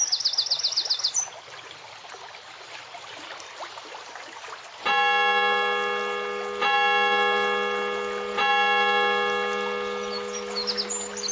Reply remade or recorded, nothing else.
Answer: recorded